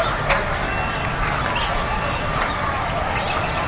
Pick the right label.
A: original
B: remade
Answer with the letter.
A